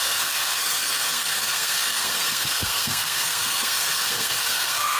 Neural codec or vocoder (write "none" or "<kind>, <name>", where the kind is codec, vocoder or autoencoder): codec, SNAC